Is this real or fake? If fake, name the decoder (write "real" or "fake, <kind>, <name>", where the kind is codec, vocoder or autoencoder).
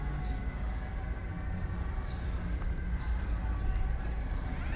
real